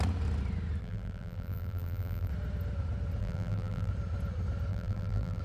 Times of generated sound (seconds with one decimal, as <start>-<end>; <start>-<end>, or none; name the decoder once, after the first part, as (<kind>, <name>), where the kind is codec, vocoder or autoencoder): 0.8-2.3 (vocoder, BigVGAN v2); 3.2-3.9; 4.7-5.4